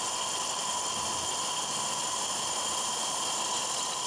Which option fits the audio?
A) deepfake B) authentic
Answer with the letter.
A